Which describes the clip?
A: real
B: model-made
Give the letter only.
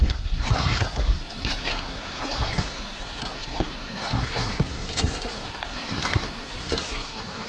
B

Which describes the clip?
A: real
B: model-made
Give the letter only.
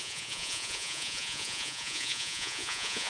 B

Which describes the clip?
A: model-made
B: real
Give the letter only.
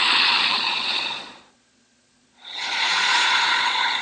A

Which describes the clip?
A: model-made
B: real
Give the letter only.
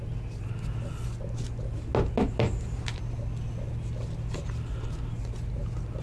B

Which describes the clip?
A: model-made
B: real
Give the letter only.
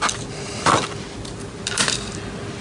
B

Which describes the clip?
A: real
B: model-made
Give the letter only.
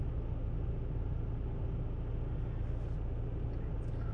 A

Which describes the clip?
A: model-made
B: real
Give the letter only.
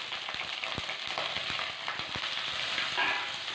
B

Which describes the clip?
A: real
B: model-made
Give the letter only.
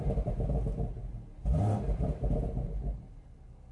B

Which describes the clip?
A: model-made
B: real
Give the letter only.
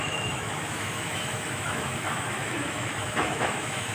A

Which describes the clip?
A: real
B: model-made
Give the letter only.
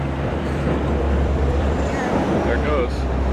B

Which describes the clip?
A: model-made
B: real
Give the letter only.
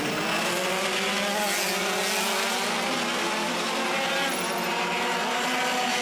B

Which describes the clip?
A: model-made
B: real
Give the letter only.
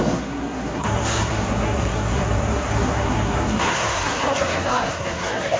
A